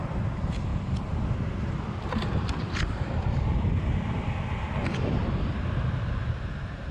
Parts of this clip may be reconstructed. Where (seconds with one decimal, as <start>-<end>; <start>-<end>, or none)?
none